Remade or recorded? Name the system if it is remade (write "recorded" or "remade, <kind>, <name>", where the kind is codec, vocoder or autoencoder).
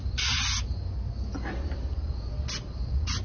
recorded